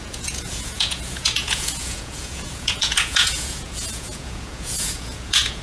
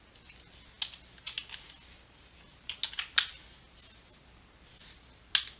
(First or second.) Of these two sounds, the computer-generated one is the first